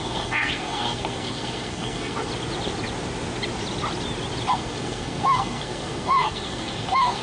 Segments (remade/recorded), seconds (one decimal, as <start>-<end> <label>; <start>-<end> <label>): 0.0-2.3 remade; 2.3-4.5 recorded; 4.5-7.2 remade